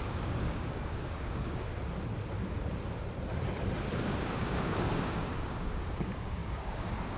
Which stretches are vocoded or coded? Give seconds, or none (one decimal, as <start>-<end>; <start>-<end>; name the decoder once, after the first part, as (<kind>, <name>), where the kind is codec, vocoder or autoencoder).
0.0-1.7 (codec, DAC); 3.9-7.2